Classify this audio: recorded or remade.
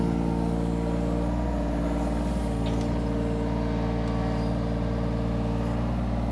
recorded